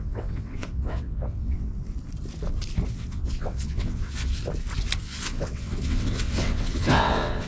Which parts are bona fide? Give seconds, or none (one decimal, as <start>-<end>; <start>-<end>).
1.7-2.9; 4.4-5.0